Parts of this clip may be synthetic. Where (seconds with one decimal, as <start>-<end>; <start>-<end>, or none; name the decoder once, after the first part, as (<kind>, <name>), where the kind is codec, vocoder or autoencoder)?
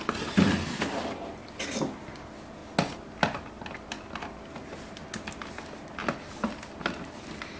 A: none